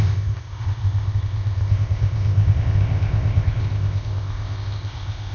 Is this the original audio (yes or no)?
no